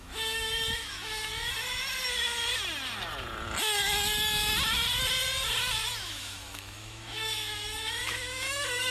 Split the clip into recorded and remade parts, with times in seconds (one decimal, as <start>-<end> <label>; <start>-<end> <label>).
0.0-1.3 remade; 1.3-6.0 recorded; 6.0-8.9 remade